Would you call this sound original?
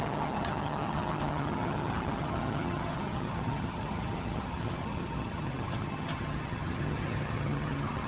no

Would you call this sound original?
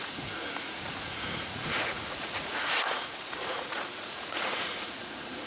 no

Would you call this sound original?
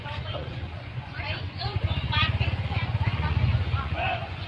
no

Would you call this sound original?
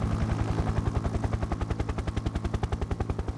yes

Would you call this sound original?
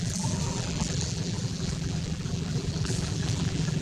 no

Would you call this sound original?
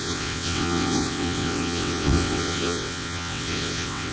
no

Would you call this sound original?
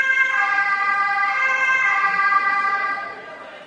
yes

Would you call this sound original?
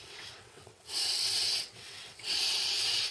no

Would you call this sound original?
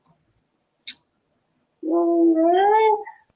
yes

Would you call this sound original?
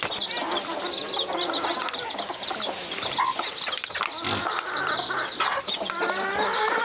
yes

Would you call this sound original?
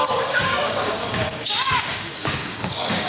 no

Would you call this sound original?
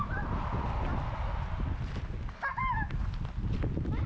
yes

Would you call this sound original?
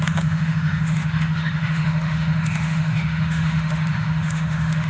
no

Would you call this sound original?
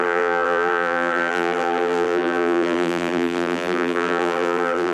no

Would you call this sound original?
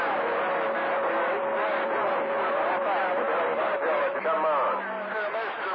yes